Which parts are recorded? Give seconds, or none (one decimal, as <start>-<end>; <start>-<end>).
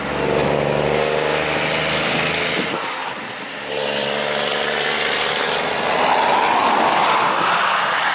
0.0-8.1